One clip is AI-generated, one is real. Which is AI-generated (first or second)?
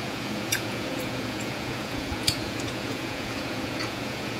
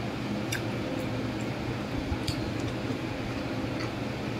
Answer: first